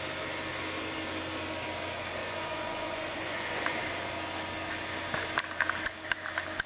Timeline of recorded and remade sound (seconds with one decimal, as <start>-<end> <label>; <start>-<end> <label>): 0.0-2.2 recorded; 2.2-3.8 remade; 3.8-6.7 recorded